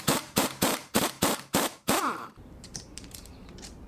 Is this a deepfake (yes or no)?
yes